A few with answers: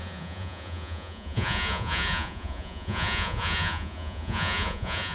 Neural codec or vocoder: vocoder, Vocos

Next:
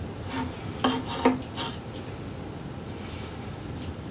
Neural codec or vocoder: none